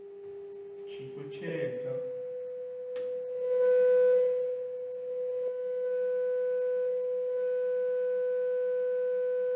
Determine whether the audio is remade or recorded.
recorded